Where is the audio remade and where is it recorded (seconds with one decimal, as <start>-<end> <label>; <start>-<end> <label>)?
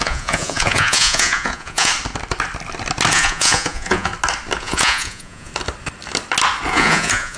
0.0-1.9 remade; 1.9-3.1 recorded; 3.1-4.1 remade; 4.1-4.6 recorded; 4.6-5.5 remade; 5.5-6.7 recorded; 6.7-7.4 remade